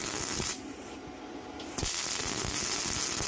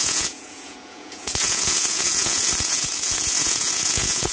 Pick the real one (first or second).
first